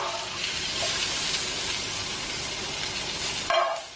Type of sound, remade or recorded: remade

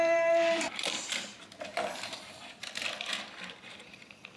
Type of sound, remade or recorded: remade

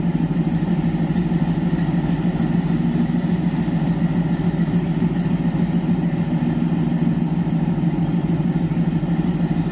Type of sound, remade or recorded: recorded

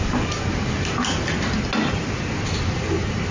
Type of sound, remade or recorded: recorded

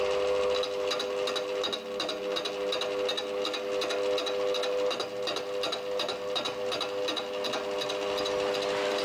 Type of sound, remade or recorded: recorded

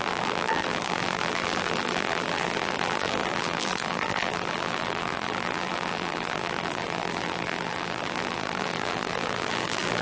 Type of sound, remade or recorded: remade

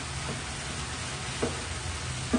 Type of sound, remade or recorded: recorded